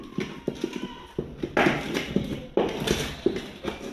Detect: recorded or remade recorded